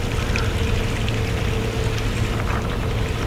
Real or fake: real